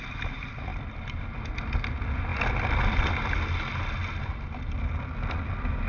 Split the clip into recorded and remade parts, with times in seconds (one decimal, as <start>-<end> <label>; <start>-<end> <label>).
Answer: 0.0-0.7 recorded; 0.7-1.5 remade; 1.5-2.3 recorded; 2.3-3.1 remade; 3.1-5.9 recorded